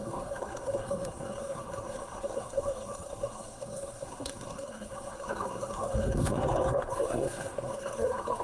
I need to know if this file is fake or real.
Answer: fake